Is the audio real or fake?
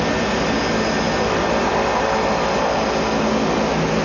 real